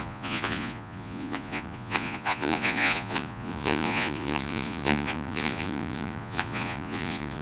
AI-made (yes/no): yes